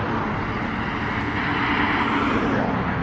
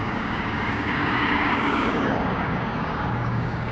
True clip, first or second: first